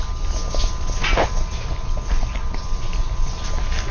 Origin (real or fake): real